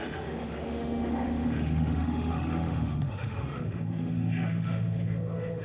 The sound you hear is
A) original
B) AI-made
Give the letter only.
B